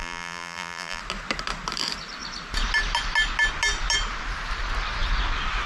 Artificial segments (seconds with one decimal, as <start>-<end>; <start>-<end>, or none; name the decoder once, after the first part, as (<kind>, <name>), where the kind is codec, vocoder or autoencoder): 0.0-1.0 (vocoder, BigVGAN v2)

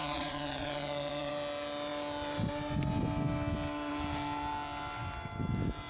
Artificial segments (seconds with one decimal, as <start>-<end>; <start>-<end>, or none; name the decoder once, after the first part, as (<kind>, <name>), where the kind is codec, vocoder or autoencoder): 0.0-1.3 (vocoder, Vocos)

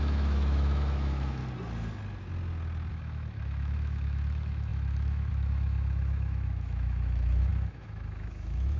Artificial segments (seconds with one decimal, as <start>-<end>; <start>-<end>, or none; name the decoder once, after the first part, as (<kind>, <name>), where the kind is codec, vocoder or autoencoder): 0.0-1.4 (autoencoder, DAC-VAE); 2.9-8.8

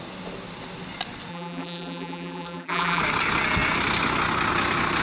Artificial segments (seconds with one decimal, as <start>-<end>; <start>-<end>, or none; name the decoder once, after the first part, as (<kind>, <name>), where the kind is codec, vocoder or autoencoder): 1.3-3.0 (vocoder, BigVGAN v2)

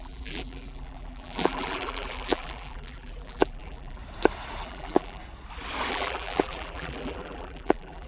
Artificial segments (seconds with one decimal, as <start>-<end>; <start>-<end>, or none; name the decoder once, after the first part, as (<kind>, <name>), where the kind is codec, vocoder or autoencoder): 0.0-4.0 (vocoder, BigVGAN v2); 4.6-5.2; 5.9-8.1

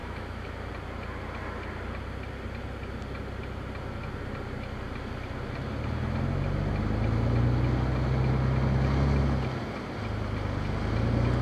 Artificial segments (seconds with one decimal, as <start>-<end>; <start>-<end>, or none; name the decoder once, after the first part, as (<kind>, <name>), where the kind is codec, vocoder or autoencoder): 0.0-0.7 (autoencoder, DAC-VAE)

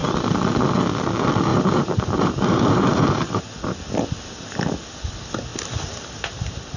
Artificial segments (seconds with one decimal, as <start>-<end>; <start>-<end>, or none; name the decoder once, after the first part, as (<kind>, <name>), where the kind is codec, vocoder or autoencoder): 1.5-3.4 (vocoder, BigVGAN v2); 5.5-6.8

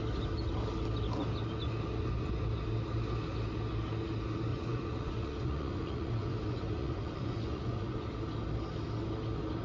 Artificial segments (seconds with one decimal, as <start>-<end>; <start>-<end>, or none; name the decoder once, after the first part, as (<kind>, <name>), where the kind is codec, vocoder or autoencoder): 4.5-8.1 (vocoder, Vocos)